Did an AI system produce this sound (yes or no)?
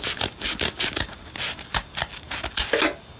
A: no